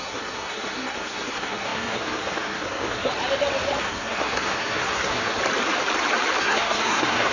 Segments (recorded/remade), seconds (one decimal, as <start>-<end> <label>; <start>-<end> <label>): 0.0-3.1 remade; 3.1-3.8 recorded; 3.8-5.4 remade; 5.4-6.4 recorded; 6.4-7.3 remade